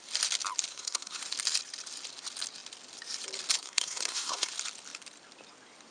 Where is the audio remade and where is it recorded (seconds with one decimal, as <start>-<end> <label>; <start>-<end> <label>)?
0.0-0.7 recorded; 0.7-1.2 remade; 1.2-3.6 recorded; 3.6-4.5 remade; 4.5-5.9 recorded